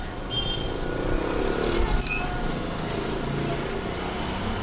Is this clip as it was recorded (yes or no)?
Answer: yes